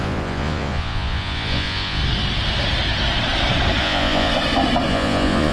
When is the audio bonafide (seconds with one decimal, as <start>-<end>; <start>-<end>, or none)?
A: 2.0-3.8; 4.3-4.9